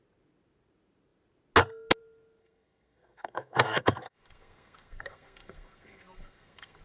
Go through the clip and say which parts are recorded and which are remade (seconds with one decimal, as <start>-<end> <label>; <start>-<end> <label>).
0.0-2.4 recorded; 2.4-6.8 remade